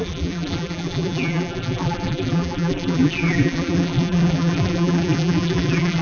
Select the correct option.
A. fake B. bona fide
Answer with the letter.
A